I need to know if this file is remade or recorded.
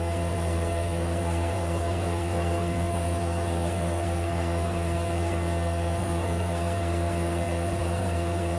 remade